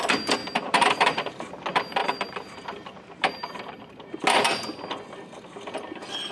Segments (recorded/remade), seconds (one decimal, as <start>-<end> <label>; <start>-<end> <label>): 0.0-0.4 recorded; 0.4-1.5 remade; 1.5-2.0 recorded; 2.0-4.1 remade; 4.1-6.3 recorded